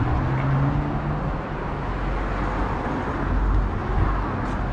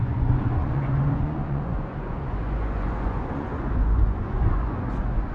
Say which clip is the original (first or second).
first